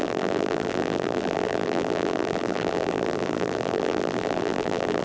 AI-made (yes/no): yes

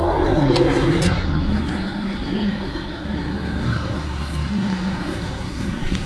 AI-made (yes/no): yes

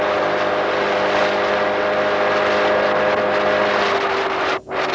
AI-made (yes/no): no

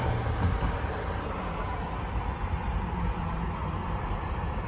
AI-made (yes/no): no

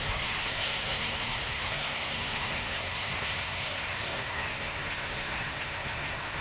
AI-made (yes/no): yes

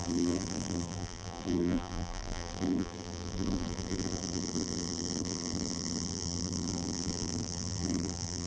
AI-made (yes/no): yes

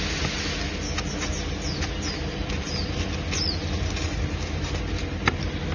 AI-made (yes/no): no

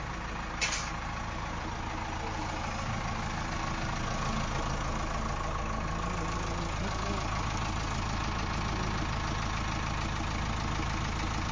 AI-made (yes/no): no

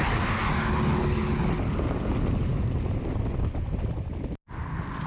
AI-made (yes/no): no